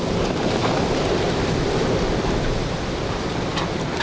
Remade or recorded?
recorded